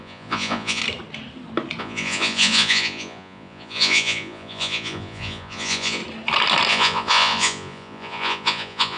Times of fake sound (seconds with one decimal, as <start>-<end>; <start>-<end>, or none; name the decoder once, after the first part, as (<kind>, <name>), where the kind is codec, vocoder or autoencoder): 0.0-0.8 (vocoder, Vocos); 1.8-6.0; 6.7-9.0